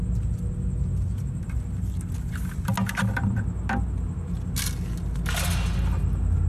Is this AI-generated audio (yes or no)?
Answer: no